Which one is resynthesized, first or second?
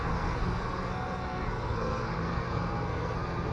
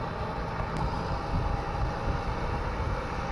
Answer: first